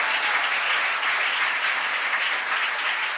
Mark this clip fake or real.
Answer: real